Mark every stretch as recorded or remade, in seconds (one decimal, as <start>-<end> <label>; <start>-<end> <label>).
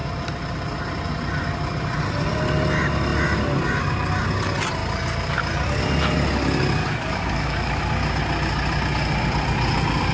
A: 0.0-6.8 recorded; 6.8-7.8 remade; 7.8-10.1 recorded